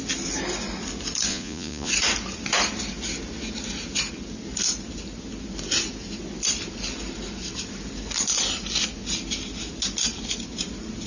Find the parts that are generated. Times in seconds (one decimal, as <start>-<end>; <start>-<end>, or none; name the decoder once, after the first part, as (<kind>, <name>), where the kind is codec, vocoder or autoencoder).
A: 1.3-1.9 (vocoder, Vocos)